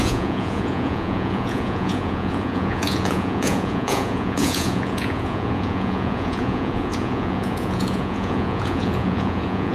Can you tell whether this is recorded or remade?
remade